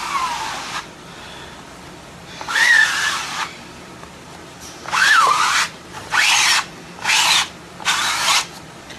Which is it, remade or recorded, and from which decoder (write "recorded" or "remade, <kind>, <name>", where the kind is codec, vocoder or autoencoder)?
recorded